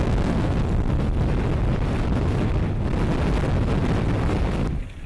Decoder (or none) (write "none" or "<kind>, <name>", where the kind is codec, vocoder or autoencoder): none